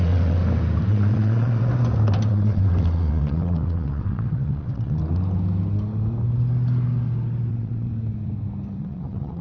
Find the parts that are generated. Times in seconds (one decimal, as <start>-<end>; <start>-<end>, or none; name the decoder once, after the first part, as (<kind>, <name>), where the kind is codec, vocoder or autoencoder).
0.0-0.4 (vocoder, WaveNeXt); 0.9-1.7; 2.3-5.0; 7.5-7.9; 8.8-9.4